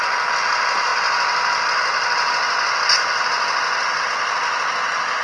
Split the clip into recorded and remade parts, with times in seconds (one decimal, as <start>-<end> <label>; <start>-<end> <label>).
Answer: 0.0-5.2 recorded